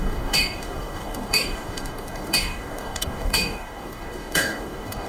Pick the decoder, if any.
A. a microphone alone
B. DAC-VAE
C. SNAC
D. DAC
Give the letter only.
D